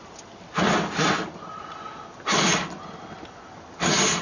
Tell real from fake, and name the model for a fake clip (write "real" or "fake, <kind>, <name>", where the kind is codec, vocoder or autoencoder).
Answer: real